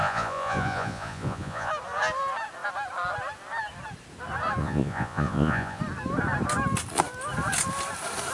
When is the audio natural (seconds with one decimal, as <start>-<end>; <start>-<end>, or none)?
1.7-4.6; 5.8-8.3